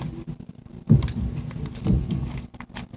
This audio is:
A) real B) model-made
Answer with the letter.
A